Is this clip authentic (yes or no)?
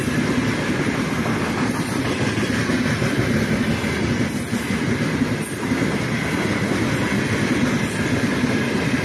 yes